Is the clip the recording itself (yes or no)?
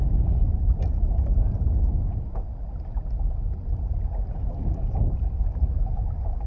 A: yes